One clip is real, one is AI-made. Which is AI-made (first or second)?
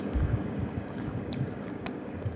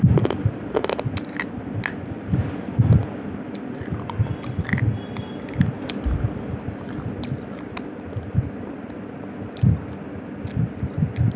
first